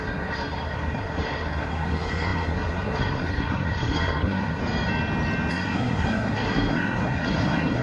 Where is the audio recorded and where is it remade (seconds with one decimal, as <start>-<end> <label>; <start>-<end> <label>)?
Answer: 0.0-4.6 remade; 4.6-5.5 recorded; 5.5-7.8 remade